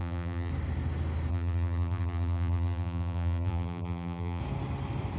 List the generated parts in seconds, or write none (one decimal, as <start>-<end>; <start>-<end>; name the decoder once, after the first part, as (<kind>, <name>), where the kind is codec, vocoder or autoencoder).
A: 0.0-0.5 (vocoder, BigVGAN v2); 1.3-4.4